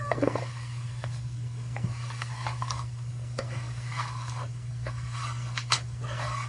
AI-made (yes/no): yes